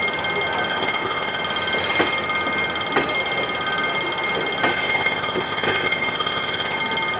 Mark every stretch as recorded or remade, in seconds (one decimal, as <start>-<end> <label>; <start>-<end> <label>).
0.0-0.7 recorded; 0.7-1.4 remade; 1.4-4.7 recorded; 4.7-6.8 remade; 6.8-7.2 recorded